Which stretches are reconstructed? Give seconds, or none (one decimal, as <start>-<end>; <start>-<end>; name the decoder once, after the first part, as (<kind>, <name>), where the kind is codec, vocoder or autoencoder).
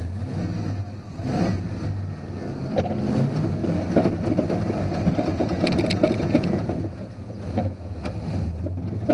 5.3-8.1 (vocoder, Vocos)